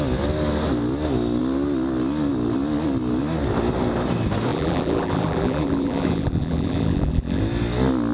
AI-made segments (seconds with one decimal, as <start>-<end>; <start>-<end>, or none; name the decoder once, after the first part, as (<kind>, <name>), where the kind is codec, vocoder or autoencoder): 4.5-7.4 (vocoder, BigVGAN v2)